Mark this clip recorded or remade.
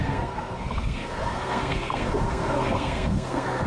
remade